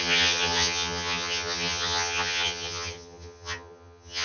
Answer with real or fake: fake